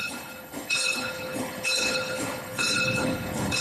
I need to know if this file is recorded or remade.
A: remade